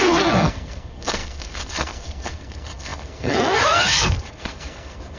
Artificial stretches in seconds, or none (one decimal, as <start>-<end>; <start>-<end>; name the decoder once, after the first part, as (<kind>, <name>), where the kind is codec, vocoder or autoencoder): 0.0-5.2 (codec, SNAC)